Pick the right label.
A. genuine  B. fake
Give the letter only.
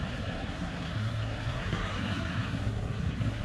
B